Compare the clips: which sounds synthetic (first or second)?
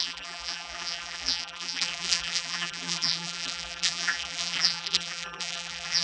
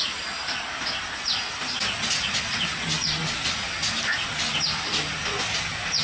first